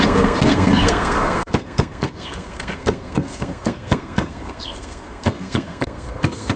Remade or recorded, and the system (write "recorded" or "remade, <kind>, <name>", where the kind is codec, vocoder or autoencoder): remade, codec, SNAC